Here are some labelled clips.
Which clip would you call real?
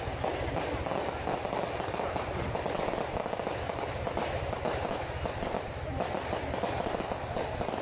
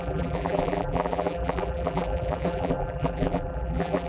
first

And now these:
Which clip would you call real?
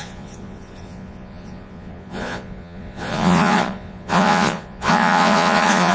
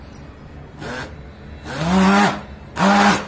second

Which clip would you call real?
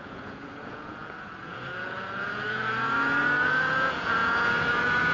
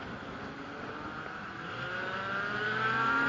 second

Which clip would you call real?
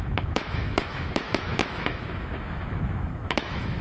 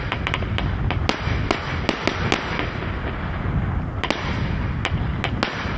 second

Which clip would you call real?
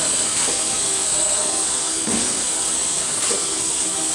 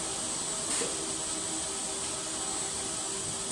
second